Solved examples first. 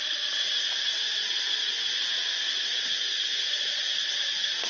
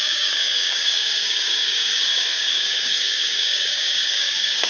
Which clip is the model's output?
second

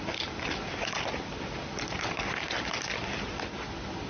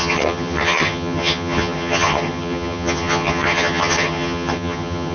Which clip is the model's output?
second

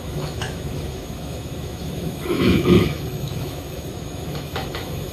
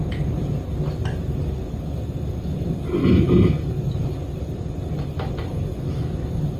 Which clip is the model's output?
first